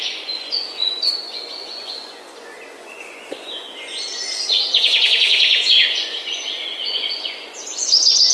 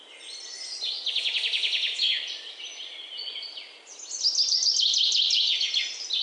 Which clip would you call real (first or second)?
second